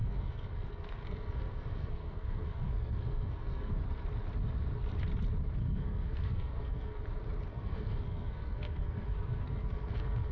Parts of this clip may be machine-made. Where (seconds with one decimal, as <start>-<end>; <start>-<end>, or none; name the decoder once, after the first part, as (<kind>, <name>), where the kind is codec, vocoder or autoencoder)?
0.0-3.7 (codec, SNAC); 5.6-7.0; 7.5-10.3